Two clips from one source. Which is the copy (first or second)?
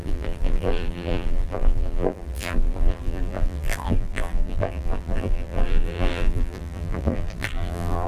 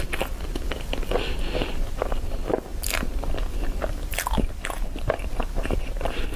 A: first